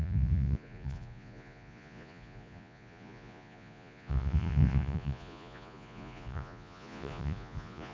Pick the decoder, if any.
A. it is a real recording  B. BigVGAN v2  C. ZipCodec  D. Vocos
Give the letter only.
D